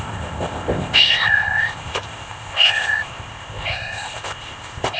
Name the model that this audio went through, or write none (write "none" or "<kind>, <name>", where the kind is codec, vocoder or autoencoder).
codec, ZipCodec